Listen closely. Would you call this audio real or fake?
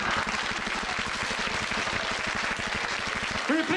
real